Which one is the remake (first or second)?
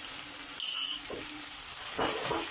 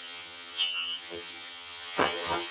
second